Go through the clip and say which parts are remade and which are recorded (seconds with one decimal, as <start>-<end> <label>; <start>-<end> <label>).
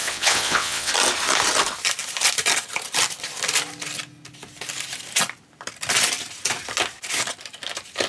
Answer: 0.0-0.9 remade; 0.9-8.1 recorded